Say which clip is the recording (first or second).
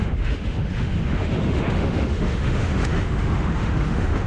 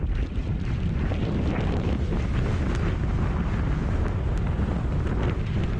second